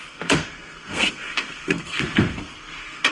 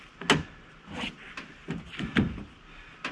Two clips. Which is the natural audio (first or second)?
second